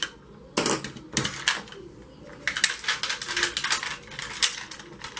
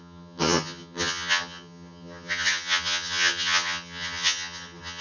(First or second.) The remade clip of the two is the second